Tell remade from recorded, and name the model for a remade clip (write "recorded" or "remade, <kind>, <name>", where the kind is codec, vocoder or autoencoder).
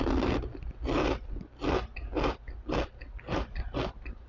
recorded